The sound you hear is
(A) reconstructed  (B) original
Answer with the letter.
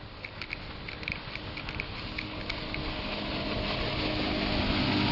B